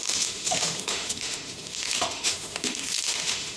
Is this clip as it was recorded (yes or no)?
no